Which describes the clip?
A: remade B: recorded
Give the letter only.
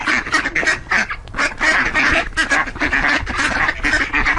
B